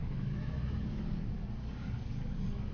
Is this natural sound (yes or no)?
no